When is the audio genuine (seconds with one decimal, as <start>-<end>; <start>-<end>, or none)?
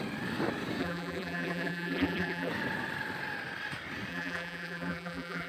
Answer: 0.0-0.8; 2.5-4.1